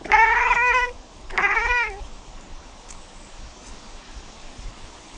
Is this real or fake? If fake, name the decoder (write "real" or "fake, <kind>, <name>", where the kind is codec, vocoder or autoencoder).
fake, codec, DAC